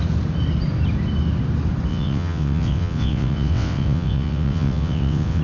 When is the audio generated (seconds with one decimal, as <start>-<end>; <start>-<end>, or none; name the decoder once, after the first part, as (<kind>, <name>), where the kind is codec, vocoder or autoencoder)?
1.9-5.4 (vocoder, WaveNeXt)